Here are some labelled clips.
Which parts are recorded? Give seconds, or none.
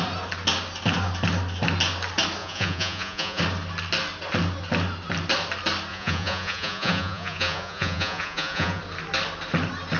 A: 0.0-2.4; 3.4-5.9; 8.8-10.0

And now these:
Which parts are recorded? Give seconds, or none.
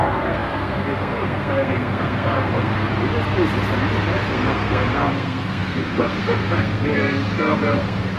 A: 2.9-4.2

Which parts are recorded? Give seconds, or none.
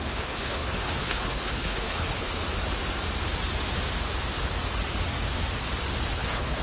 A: 2.4-6.1